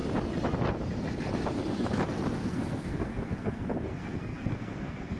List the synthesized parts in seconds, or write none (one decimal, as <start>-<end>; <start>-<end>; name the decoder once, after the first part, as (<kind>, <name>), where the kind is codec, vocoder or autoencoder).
2.4-5.2 (codec, SNAC)